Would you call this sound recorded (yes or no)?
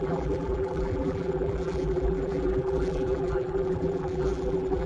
no